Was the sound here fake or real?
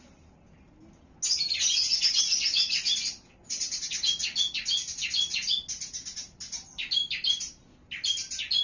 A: real